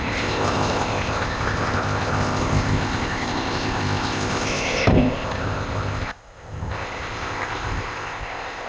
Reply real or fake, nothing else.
fake